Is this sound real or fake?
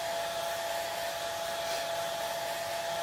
real